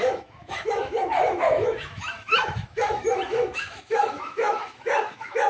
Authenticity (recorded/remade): remade